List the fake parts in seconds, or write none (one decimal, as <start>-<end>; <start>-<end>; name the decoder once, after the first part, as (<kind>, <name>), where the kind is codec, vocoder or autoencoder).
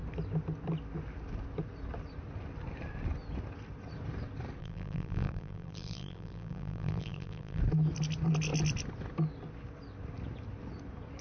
4.6-7.6 (vocoder, BigVGAN v2)